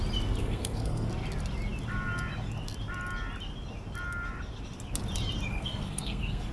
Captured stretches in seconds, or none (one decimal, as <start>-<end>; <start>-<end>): 0.0-0.4; 1.1-5.5